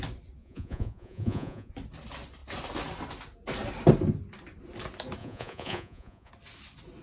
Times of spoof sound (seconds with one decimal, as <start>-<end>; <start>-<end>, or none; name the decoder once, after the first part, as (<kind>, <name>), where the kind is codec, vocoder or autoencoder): 0.4-1.7 (vocoder, Vocos); 5.2-6.3